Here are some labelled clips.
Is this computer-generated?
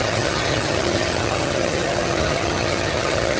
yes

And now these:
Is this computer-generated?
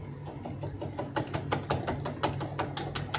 no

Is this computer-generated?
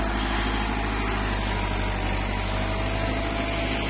no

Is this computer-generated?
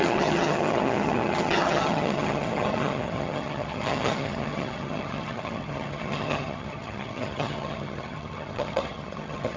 yes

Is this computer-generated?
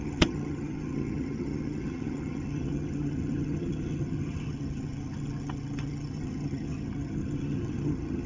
yes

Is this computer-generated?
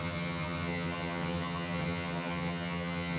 yes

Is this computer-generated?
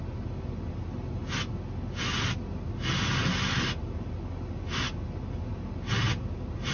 no